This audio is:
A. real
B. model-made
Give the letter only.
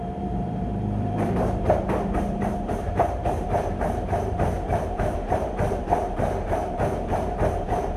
B